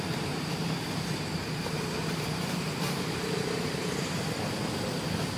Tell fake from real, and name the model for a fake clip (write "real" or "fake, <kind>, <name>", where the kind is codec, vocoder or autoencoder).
fake, vocoder, BigVGAN v2